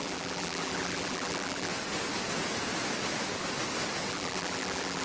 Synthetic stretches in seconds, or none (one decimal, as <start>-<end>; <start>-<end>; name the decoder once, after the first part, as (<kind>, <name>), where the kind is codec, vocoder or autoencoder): 0.0-1.7 (vocoder, BigVGAN v2); 4.1-5.0